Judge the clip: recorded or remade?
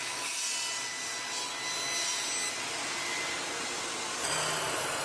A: recorded